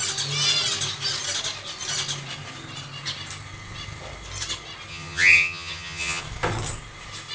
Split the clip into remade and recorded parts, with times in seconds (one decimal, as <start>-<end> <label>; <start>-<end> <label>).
0.0-4.9 recorded; 4.9-6.2 remade; 6.2-7.3 recorded